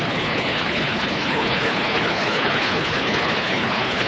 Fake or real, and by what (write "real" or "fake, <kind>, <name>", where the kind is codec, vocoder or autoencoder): fake, codec, HILCodec